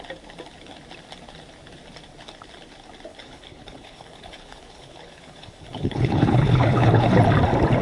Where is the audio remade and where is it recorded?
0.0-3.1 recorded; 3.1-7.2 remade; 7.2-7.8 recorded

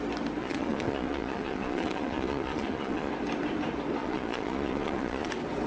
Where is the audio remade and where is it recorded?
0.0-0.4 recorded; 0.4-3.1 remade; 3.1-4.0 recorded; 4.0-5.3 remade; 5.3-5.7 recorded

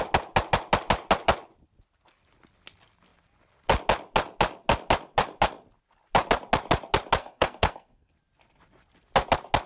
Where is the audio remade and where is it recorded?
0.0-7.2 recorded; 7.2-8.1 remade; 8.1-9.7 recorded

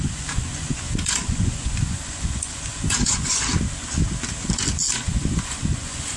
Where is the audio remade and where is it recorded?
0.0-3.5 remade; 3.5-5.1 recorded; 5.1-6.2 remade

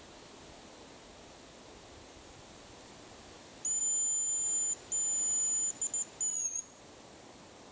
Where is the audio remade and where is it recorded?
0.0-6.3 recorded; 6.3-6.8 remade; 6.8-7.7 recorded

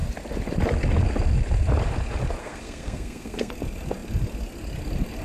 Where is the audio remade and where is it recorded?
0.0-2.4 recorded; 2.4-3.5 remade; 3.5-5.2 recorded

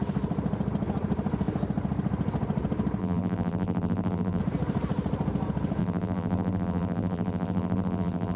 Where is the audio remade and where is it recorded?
0.0-3.0 recorded; 3.0-4.4 remade; 4.4-5.8 recorded; 5.8-8.4 remade

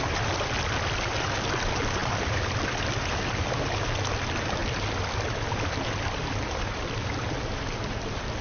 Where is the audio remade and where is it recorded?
0.0-8.4 recorded